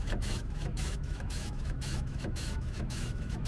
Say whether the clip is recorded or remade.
remade